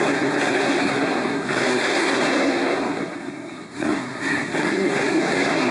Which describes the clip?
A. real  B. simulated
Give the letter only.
B